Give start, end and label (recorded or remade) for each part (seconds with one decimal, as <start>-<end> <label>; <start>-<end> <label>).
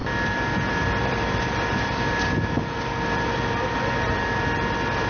0.0-5.1 recorded